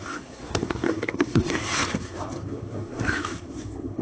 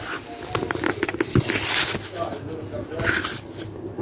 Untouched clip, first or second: second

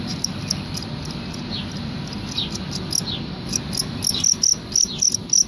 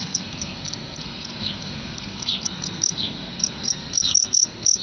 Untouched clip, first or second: first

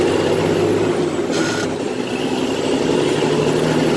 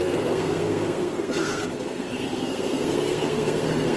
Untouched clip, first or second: first